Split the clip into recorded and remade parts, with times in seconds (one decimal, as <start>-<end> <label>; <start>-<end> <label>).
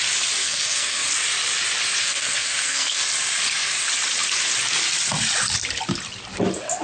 0.0-0.4 recorded; 0.4-1.1 remade; 1.1-2.0 recorded; 2.0-3.0 remade; 3.0-6.8 recorded